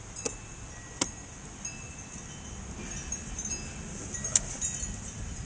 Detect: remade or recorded recorded